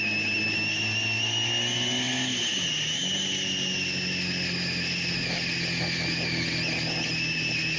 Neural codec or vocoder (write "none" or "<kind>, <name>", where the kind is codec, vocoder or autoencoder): none